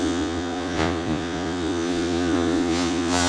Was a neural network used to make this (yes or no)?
yes